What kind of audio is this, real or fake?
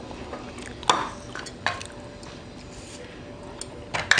real